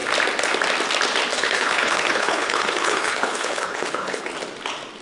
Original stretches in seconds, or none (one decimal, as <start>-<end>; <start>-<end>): 0.0-1.3; 4.3-5.0